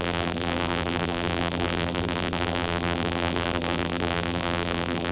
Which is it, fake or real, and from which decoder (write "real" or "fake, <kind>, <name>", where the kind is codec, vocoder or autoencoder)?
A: fake, vocoder, BigVGAN v2